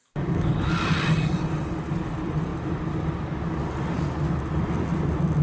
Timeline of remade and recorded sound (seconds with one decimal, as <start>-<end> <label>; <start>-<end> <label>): 0.0-0.7 remade; 0.7-5.4 recorded